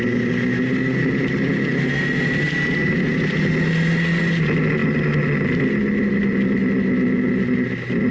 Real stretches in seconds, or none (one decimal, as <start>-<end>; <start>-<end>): 0.0-8.1

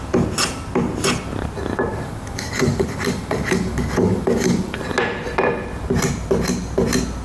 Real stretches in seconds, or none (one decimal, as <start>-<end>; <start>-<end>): 0.0-1.9; 4.8-7.2

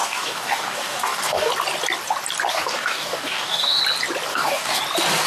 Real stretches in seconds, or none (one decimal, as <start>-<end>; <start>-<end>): 1.5-2.5; 3.8-4.3; 4.8-5.3

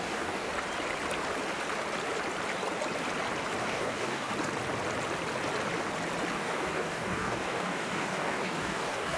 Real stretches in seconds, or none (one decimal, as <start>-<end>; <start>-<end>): 0.5-3.6; 4.3-6.3

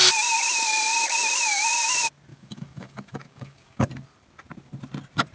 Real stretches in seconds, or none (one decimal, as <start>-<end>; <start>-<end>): 0.0-2.3; 3.9-5.3

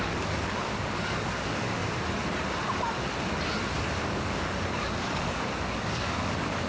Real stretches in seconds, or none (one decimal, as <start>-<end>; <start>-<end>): 1.8-4.0